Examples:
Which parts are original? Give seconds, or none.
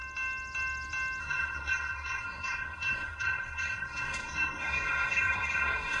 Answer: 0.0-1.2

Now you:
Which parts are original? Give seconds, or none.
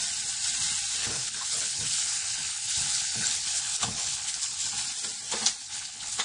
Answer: 0.0-1.0; 4.7-5.6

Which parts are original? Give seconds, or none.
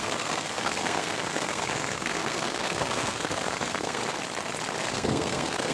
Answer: 4.0-4.8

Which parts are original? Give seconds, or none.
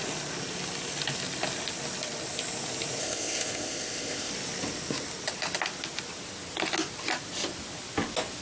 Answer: 0.0-3.0; 4.3-8.4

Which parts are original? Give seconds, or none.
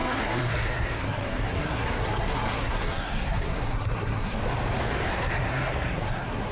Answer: 4.4-5.1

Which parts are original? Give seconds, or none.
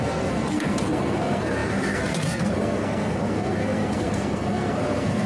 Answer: none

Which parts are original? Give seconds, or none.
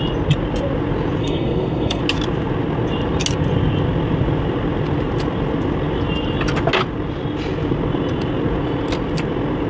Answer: 0.0-1.2; 2.0-9.7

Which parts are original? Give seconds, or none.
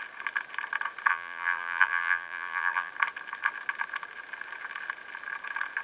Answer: 0.0-1.1; 2.9-5.8